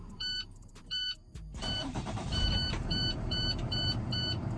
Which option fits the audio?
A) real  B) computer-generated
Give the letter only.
B